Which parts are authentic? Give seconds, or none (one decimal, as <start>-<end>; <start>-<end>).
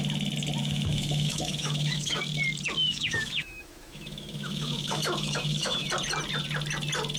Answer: 0.0-0.6; 2.2-2.8; 5.9-7.2